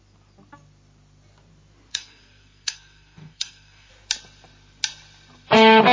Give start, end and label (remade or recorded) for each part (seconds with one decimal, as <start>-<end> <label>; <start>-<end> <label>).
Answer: 0.0-1.9 recorded; 1.9-3.9 remade; 3.9-5.9 recorded

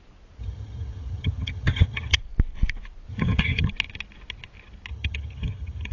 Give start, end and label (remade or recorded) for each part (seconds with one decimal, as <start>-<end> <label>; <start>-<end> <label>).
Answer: 0.0-0.4 recorded; 0.4-2.2 remade; 2.2-3.1 recorded; 3.1-3.7 remade; 3.7-4.9 recorded; 4.9-5.9 remade

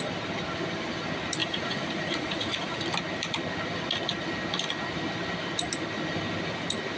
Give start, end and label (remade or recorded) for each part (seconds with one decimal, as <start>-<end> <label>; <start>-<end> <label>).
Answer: 0.0-1.4 recorded; 1.4-2.8 remade; 2.8-7.0 recorded

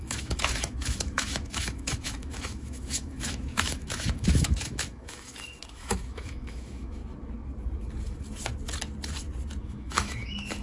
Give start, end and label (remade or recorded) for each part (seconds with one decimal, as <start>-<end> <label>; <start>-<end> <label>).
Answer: 0.0-7.0 remade; 7.0-9.6 recorded; 9.6-10.6 remade